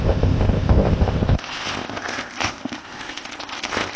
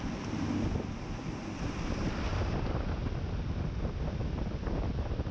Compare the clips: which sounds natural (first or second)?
second